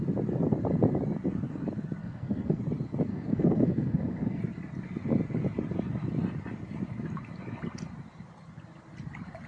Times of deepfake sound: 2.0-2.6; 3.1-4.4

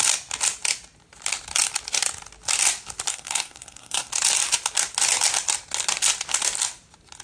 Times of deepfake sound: 3.1-4.1

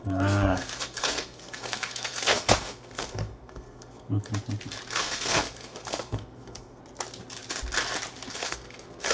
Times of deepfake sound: 0.0-4.3; 4.9-6.8; 8.3-9.1

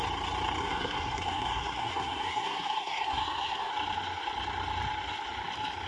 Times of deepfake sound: 0.6-3.7

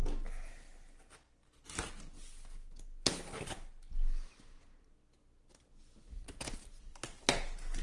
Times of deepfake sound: none

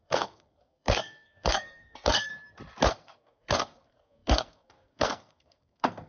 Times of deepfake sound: 0.0-2.3; 2.9-6.1